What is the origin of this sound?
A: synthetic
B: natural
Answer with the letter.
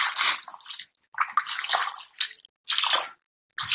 B